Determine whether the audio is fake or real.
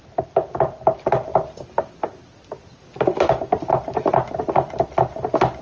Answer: real